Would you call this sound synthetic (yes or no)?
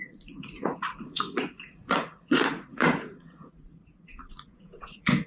yes